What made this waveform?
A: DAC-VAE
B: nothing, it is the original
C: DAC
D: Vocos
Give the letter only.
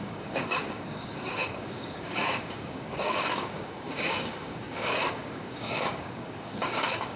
C